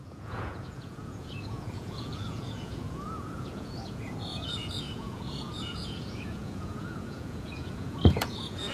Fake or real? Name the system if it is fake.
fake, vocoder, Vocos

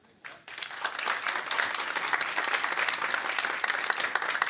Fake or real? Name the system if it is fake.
real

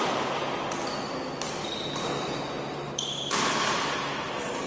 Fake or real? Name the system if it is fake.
real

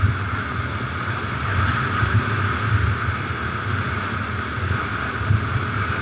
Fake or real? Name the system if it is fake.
real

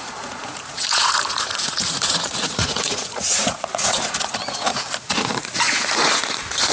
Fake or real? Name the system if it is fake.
fake, vocoder, Vocos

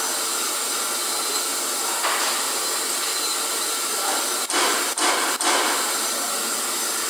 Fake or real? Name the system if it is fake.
real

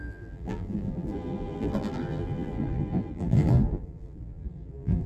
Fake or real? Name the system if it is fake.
fake, vocoder, BigVGAN v2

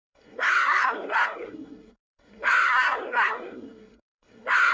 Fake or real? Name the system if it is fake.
fake, codec, SNAC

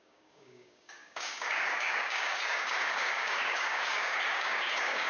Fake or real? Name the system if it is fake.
fake, codec, DAC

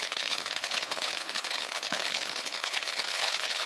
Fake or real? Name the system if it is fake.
fake, codec, HILCodec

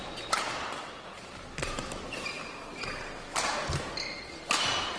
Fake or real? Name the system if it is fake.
real